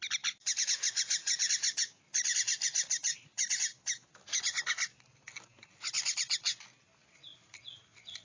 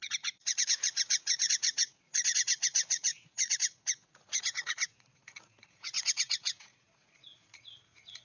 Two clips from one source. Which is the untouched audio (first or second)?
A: first